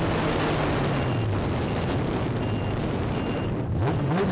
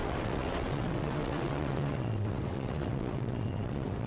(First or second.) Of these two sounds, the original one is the first